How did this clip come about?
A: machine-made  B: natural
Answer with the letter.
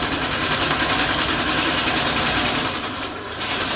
A